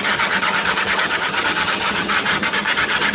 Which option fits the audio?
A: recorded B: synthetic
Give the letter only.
B